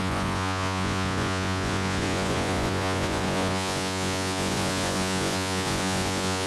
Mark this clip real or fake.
fake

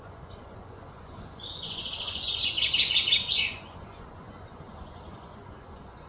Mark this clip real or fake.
fake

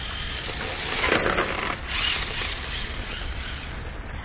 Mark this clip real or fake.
real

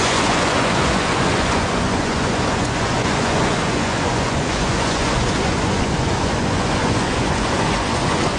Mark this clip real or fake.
fake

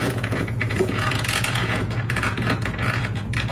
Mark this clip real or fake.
fake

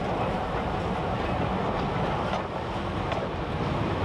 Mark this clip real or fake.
real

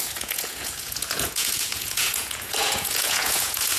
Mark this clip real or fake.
fake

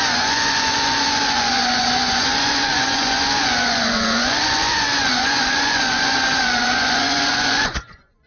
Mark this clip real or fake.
fake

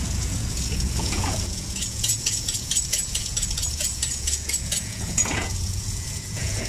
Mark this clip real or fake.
fake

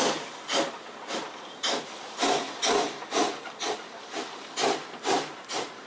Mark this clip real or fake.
real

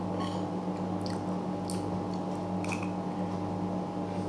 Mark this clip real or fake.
real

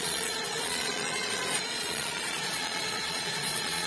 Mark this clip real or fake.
fake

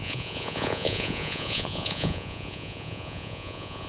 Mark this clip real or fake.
fake